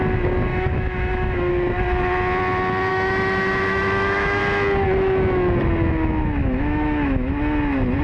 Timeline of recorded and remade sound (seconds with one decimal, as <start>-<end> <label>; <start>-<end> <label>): 0.0-0.5 recorded; 0.5-1.5 remade; 1.5-2.9 recorded; 2.9-4.4 remade; 4.4-6.4 recorded; 6.4-7.3 remade; 7.3-8.0 recorded